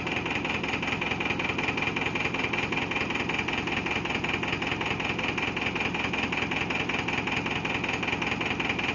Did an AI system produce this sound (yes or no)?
no